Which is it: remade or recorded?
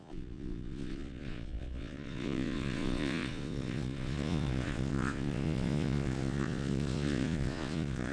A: remade